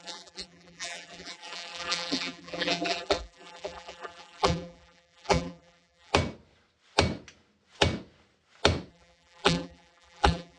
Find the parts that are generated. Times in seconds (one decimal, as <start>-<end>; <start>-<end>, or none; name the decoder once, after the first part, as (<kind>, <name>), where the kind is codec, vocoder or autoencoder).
0.0-6.1 (vocoder, BigVGAN v2); 8.9-10.6